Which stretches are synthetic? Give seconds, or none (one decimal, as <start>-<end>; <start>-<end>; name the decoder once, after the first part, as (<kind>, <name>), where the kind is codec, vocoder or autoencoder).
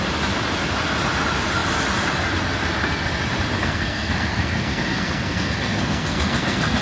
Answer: 3.6-6.8 (codec, SNAC)